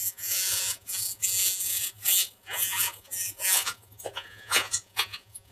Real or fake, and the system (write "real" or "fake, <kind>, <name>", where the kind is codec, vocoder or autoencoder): fake, vocoder, Vocos